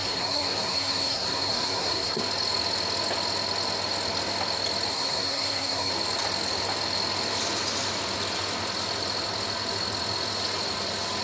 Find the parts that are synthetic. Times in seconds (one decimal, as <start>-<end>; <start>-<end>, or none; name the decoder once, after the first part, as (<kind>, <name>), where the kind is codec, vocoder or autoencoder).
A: 0.0-2.2 (codec, SNAC); 4.9-5.9